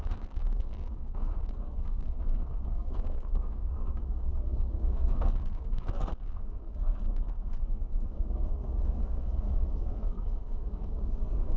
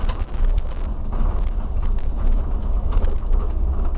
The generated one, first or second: first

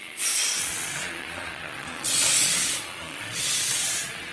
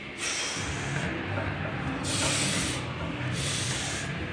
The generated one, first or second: first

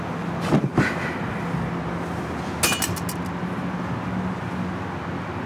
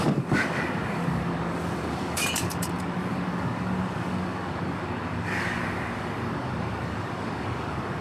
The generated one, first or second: second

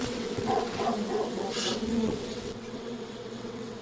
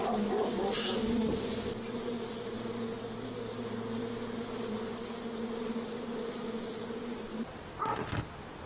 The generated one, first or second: first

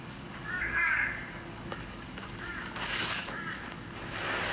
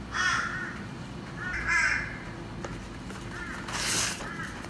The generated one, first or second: first